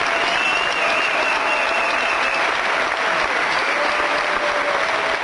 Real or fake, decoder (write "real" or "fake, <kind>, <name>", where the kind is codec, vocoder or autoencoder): real